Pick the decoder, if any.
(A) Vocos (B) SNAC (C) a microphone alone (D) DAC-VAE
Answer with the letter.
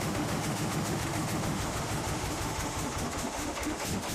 D